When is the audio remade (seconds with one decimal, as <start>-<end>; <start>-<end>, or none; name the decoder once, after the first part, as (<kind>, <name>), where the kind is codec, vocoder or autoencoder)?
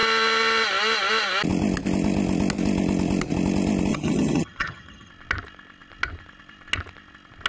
3.9-5.1 (vocoder, HiFi-GAN)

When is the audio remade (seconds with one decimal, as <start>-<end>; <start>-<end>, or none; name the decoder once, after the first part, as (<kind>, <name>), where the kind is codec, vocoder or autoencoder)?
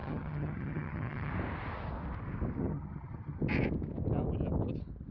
0.0-1.3 (vocoder, HiFi-GAN); 2.6-3.4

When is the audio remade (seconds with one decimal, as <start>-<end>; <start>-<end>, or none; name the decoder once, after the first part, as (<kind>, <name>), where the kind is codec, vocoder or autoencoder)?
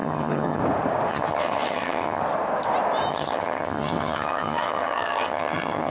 0.0-0.6 (vocoder, HiFi-GAN); 1.1-2.2; 3.1-5.9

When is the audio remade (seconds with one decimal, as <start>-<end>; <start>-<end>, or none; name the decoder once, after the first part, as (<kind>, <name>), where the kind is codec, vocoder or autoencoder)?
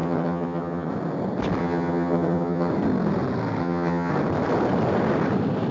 0.0-0.9 (vocoder, HiFi-GAN); 1.6-2.7; 3.6-4.1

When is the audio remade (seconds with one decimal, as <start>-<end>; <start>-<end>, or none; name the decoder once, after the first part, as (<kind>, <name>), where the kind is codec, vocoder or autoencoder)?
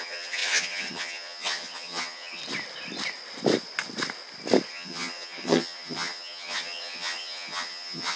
0.0-2.4 (vocoder, HiFi-GAN); 4.7-8.2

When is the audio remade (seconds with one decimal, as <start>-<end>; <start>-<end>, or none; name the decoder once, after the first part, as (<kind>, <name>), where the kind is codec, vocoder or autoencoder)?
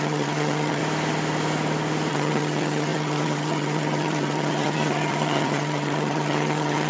0.0-0.8 (vocoder, HiFi-GAN); 2.1-6.9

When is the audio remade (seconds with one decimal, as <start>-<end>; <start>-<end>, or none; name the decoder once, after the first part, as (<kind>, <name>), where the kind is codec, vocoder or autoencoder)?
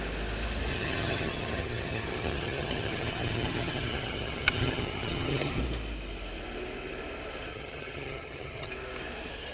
0.7-5.6 (vocoder, HiFi-GAN); 7.5-8.7